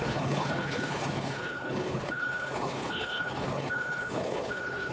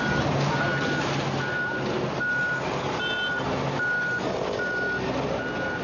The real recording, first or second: second